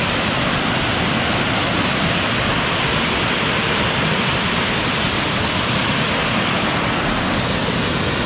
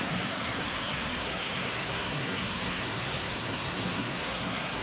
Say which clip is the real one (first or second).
first